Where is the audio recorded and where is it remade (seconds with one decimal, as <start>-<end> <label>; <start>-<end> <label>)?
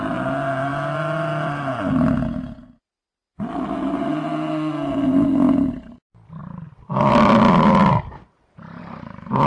0.0-0.7 recorded; 0.7-1.9 remade; 1.9-6.4 recorded; 6.4-7.1 remade; 7.1-7.8 recorded; 7.8-8.8 remade; 8.8-9.5 recorded